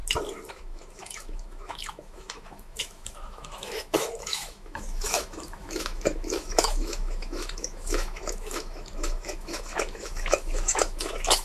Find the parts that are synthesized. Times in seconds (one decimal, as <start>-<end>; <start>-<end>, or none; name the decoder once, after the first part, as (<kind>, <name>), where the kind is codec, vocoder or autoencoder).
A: 0.5-11.4 (autoencoder, DAC-VAE)